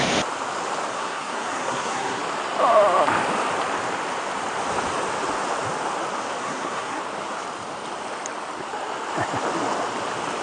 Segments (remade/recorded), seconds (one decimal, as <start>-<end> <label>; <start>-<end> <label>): 0.0-0.9 recorded; 0.9-2.2 remade; 2.2-6.4 recorded; 6.4-7.0 remade; 7.0-10.4 recorded